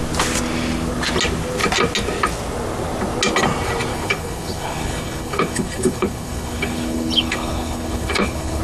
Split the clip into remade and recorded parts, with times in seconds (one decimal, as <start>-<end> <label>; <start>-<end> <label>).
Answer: 0.0-3.9 recorded; 3.9-8.6 remade